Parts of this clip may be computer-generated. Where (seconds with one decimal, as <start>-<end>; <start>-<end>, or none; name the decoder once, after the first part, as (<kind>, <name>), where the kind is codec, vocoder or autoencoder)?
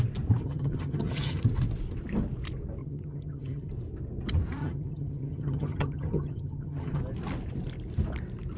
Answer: 0.4-1.4 (vocoder, HiFi-GAN); 2.8-3.7; 4.6-7.0